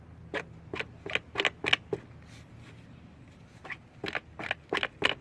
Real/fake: real